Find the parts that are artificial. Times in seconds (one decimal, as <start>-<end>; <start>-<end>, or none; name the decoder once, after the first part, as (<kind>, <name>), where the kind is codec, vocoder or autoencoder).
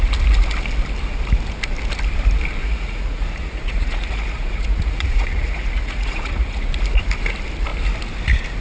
2.6-6.7 (vocoder, Vocos)